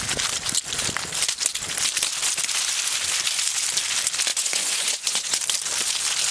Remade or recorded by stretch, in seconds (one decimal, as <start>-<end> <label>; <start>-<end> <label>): 0.0-4.3 recorded; 4.3-5.4 remade; 5.4-6.3 recorded